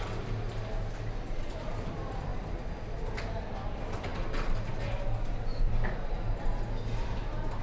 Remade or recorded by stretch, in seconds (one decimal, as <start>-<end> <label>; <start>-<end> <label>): 0.0-7.6 recorded